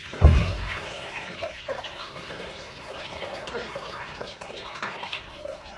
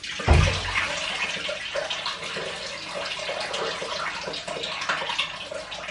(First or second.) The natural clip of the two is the second